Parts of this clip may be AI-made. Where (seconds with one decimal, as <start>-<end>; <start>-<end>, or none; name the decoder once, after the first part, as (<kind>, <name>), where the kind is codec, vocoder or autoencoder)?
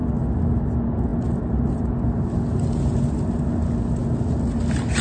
none